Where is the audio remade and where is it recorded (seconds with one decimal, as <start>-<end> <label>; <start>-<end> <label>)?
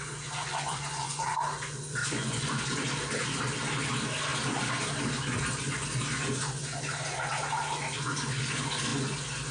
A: 0.0-0.5 recorded; 0.5-1.3 remade; 1.3-2.0 recorded; 2.0-2.6 remade; 2.6-9.5 recorded